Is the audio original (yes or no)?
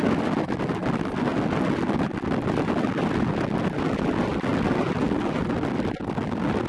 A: yes